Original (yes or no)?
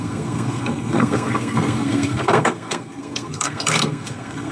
no